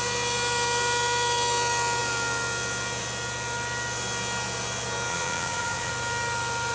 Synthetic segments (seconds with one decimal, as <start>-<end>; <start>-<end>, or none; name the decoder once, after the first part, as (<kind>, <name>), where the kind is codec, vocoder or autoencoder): 5.1-5.9 (vocoder, Vocos)